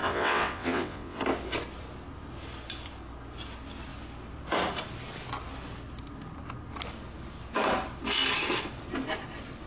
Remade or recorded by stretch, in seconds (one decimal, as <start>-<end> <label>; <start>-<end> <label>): 0.0-1.2 remade; 1.2-9.7 recorded